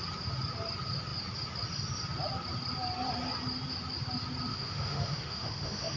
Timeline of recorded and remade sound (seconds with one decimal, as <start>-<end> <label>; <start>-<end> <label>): 0.0-4.5 recorded; 4.5-6.0 remade